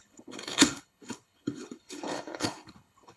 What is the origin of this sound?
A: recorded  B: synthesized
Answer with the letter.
B